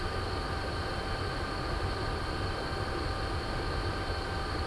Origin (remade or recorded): recorded